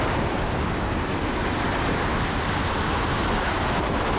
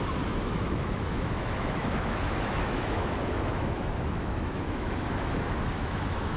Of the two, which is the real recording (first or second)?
first